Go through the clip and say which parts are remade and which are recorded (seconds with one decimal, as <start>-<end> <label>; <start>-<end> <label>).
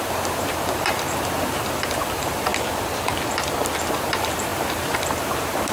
0.0-2.5 remade; 2.5-3.9 recorded; 3.9-5.7 remade